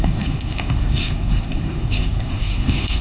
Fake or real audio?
fake